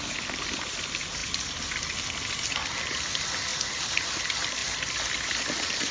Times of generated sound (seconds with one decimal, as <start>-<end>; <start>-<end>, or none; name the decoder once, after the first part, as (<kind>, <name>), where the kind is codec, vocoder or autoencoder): none